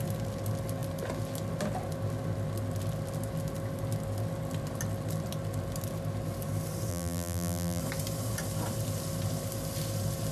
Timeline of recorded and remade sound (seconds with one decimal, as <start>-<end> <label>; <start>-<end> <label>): 0.0-6.9 recorded; 6.9-7.8 remade; 7.8-10.3 recorded